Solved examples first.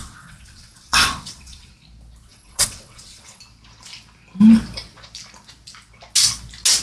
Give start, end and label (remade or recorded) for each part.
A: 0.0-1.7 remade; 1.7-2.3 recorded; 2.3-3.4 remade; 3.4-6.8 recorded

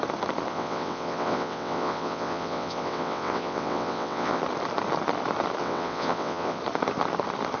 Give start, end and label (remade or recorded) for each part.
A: 0.0-0.5 recorded; 0.5-4.4 remade; 4.4-5.6 recorded; 5.6-6.6 remade; 6.6-7.6 recorded